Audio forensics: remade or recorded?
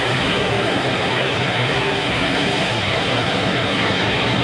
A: remade